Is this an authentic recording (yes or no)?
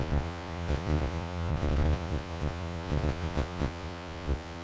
no